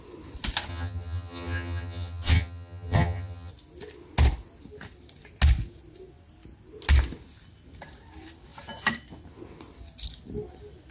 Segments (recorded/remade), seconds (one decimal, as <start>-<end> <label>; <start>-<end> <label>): 0.0-0.7 recorded; 0.7-3.5 remade; 3.5-10.9 recorded